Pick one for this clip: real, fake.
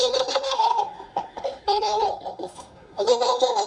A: fake